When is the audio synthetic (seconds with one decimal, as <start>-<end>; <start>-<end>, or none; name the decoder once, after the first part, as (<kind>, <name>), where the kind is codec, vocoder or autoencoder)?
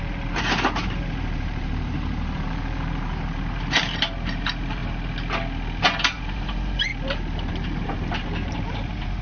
0.0-4.8 (vocoder, BigVGAN v2); 5.8-6.9; 7.5-9.2